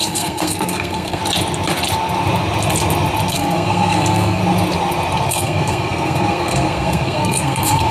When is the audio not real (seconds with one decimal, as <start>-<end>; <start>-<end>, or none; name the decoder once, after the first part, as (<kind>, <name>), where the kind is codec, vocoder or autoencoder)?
0.0-1.2 (codec, SNAC); 3.3-4.4; 5.3-7.9